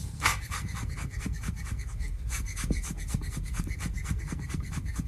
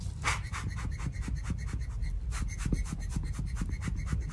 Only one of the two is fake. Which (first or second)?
first